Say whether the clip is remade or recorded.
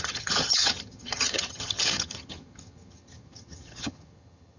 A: remade